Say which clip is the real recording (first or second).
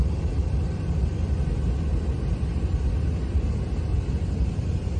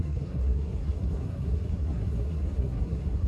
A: first